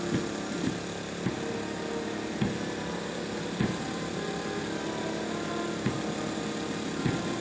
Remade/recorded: recorded